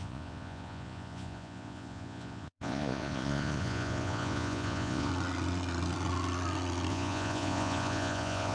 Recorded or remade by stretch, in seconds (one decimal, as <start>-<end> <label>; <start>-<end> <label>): 0.0-5.1 remade; 5.1-6.9 recorded; 6.9-8.5 remade